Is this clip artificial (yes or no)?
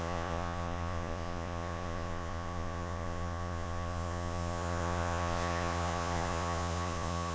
yes